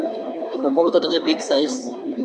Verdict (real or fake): fake